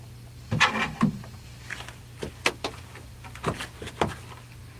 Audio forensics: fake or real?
real